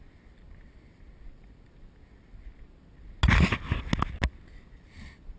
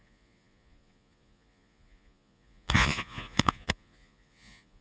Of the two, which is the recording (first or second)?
first